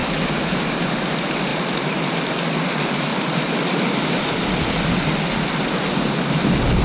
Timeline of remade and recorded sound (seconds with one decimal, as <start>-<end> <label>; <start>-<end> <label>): 0.0-3.1 recorded; 3.1-4.9 remade; 4.9-6.8 recorded